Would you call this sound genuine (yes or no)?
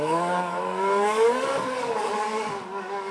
no